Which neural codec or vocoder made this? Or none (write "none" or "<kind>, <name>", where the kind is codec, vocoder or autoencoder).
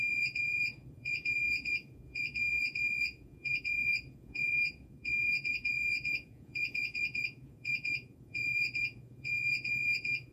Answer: vocoder, Vocos